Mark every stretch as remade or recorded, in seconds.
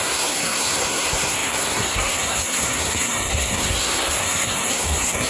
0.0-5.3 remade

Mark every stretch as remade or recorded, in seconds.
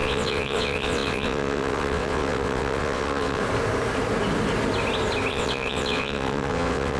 0.0-3.4 remade; 3.4-5.3 recorded; 5.3-7.0 remade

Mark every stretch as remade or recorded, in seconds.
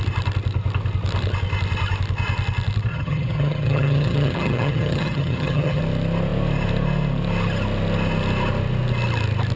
0.0-2.9 recorded; 2.9-5.8 remade; 5.8-9.6 recorded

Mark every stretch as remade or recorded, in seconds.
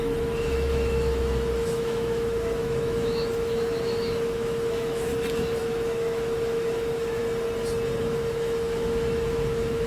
0.0-5.1 remade; 5.1-5.6 recorded; 5.6-7.2 remade; 7.2-8.0 recorded; 8.0-9.9 remade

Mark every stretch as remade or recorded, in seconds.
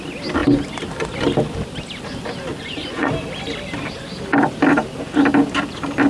0.0-2.5 recorded; 2.5-3.1 remade; 3.1-6.1 recorded